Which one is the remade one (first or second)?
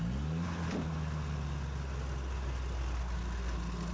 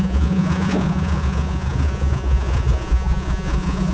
second